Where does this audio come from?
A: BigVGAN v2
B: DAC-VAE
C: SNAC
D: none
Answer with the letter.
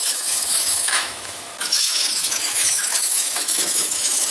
B